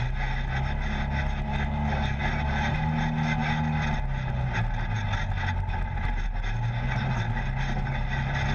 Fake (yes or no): no